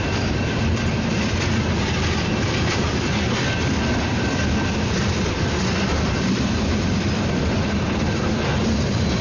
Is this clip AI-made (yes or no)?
yes